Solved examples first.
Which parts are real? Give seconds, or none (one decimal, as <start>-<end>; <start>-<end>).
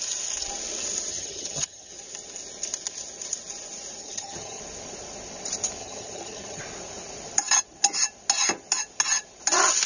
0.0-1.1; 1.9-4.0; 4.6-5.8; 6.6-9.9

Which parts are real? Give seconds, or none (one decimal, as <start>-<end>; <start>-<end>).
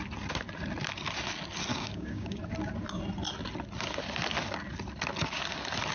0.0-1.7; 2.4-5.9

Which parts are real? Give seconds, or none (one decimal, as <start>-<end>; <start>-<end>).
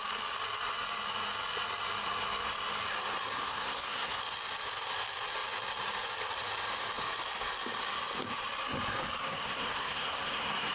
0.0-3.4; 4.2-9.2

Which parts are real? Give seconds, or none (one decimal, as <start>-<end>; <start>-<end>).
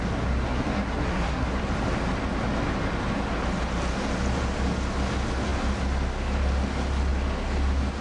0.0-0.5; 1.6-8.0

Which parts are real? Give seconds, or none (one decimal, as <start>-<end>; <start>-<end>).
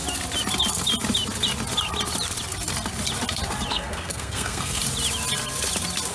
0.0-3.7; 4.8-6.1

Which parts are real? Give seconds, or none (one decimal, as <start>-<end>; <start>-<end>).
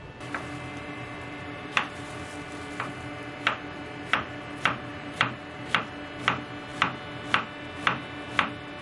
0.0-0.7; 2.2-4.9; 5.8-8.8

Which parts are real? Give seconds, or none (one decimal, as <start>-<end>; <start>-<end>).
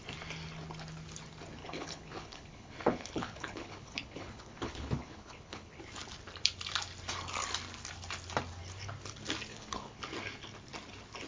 0.0-1.6; 5.8-9.5; 10.0-11.3